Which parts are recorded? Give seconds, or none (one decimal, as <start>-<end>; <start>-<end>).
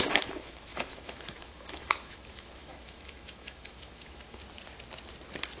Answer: 4.4-5.6